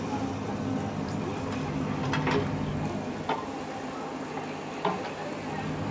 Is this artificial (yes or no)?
no